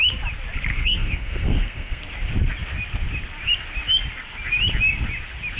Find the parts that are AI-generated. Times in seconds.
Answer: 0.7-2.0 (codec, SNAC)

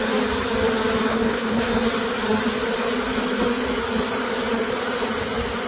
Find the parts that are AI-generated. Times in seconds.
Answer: 1.1-1.7 (codec, HILCodec)

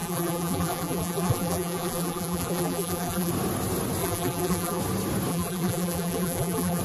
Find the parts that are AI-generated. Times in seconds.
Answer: 0.0-3.3 (vocoder, BigVGAN v2); 4.0-4.8; 5.3-6.8

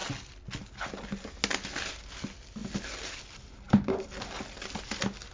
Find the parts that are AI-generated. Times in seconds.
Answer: none

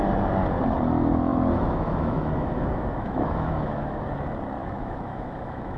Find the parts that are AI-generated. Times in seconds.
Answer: 1.3-4.0 (autoencoder, DAC-VAE); 4.6-5.8

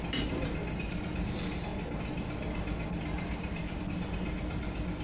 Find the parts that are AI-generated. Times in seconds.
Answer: none

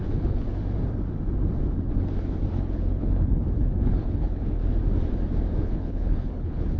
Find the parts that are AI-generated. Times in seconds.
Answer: 0.0-0.6 (codec, HILCodec); 2.5-4.6; 5.6-6.8